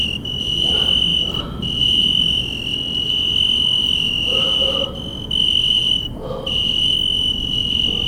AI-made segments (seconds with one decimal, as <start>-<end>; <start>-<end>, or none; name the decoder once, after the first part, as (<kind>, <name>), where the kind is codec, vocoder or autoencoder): 5.8-6.3 (vocoder, BigVGAN v2)